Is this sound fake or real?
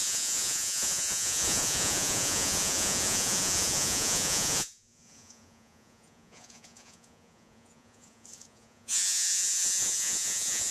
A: fake